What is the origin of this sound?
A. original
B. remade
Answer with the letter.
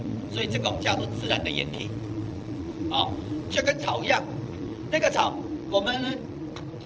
B